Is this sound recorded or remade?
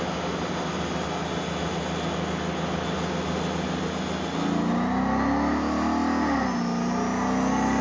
recorded